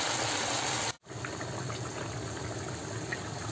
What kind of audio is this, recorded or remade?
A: recorded